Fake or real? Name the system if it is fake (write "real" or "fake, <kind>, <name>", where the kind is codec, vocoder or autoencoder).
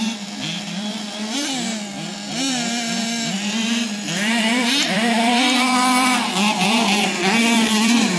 fake, vocoder, BigVGAN v2